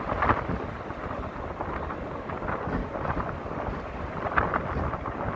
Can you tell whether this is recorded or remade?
recorded